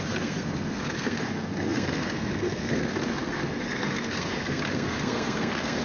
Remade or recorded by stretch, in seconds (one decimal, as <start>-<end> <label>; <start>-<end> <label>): 0.0-5.8 remade